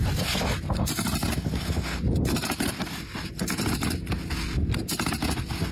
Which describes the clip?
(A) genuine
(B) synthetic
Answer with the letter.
A